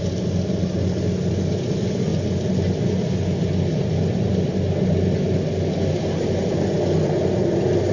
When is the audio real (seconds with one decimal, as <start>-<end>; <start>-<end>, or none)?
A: 0.0-7.9